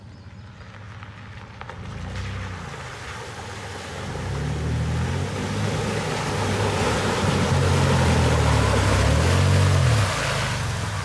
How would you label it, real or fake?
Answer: real